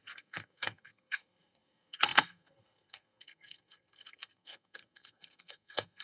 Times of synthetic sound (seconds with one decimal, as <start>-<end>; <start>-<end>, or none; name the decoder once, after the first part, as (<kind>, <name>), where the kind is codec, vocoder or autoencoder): 0.0-6.0 (codec, SNAC)